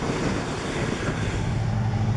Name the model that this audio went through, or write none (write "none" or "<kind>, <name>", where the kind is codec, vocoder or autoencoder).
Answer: none